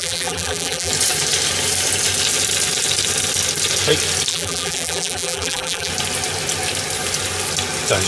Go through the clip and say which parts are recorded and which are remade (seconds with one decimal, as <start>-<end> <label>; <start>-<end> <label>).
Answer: 0.0-0.9 remade; 0.9-4.3 recorded; 4.3-5.9 remade; 5.9-8.1 recorded